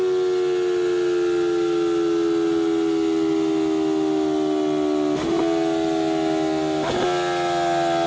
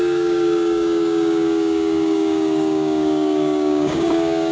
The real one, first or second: first